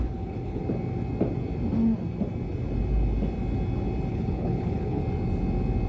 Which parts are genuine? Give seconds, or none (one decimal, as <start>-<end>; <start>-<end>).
0.6-4.1; 5.0-5.9